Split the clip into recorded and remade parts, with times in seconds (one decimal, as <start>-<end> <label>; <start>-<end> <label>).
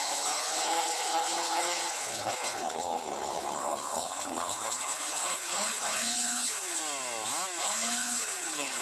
0.0-6.8 remade; 6.8-7.6 recorded; 7.6-8.8 remade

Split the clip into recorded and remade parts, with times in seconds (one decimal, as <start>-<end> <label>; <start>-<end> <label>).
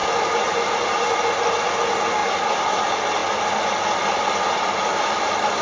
0.0-5.6 recorded